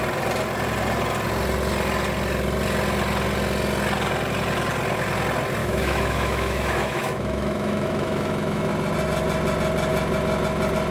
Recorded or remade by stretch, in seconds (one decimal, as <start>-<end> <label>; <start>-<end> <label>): 0.0-5.6 recorded; 5.6-8.7 remade; 8.7-10.9 recorded